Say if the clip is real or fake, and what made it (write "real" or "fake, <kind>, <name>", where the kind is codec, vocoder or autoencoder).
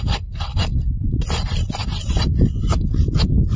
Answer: real